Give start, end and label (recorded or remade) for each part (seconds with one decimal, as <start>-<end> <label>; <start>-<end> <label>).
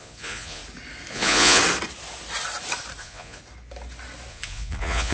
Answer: 0.0-0.6 remade; 0.6-1.1 recorded; 1.1-1.6 remade; 1.6-3.0 recorded; 3.0-3.4 remade; 3.4-4.3 recorded; 4.3-5.1 remade